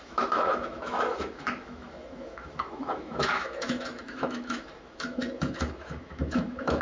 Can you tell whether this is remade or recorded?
remade